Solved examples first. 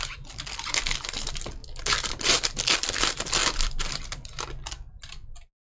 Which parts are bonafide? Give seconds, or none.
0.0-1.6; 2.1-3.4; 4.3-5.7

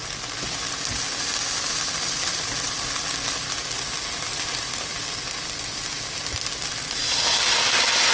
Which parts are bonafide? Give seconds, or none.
0.0-8.1

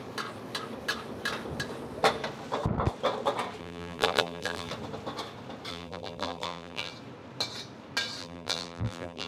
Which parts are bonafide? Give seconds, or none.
0.0-3.6; 4.7-5.7; 6.9-8.2

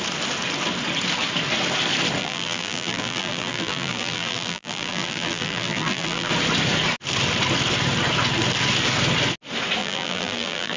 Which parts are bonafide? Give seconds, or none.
0.0-2.2; 6.3-9.8

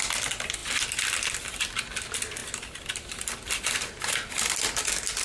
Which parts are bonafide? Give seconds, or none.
0.0-0.6; 1.8-2.4; 4.8-5.2